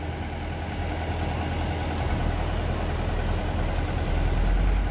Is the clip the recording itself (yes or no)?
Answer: yes